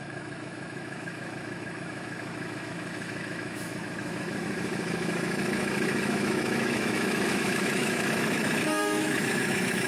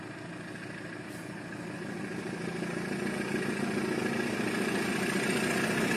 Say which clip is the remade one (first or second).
first